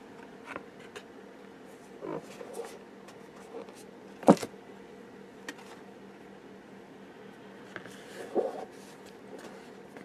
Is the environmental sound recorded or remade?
recorded